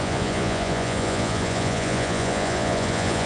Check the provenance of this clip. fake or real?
fake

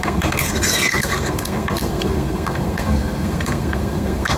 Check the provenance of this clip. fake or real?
fake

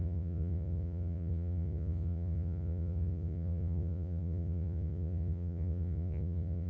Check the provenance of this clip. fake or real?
fake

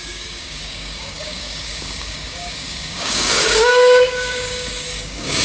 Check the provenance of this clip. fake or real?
fake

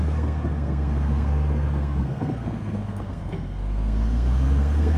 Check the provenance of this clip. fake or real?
fake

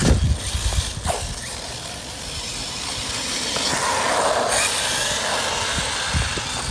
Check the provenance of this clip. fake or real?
real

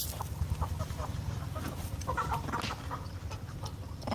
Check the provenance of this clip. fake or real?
real